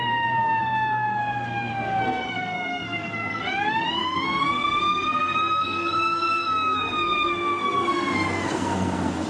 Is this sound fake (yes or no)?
yes